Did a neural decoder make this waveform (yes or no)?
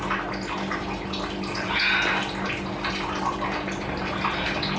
no